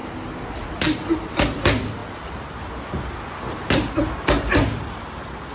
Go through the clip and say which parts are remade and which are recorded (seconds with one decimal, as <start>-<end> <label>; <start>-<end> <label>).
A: 0.0-5.5 recorded